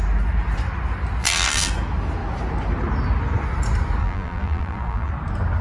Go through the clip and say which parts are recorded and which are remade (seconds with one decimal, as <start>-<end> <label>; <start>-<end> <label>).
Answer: 0.0-1.2 recorded; 1.2-1.7 remade; 1.7-4.0 recorded; 4.0-5.1 remade; 5.1-5.6 recorded